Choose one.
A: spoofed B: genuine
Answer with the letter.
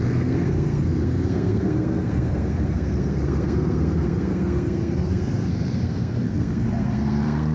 A